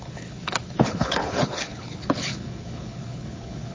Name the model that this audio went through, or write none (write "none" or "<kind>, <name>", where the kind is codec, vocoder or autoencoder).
codec, HILCodec